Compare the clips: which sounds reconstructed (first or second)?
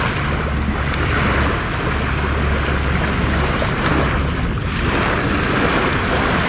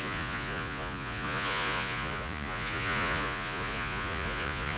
second